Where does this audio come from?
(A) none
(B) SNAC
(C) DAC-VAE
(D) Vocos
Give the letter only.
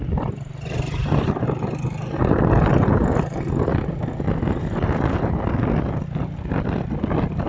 A